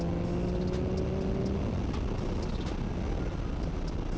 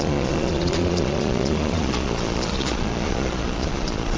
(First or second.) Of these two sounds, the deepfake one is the second